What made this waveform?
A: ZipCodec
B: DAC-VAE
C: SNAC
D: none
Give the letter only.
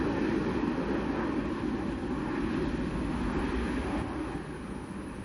D